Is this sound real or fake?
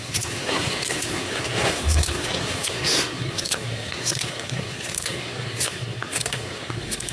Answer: fake